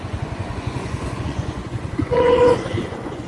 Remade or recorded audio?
remade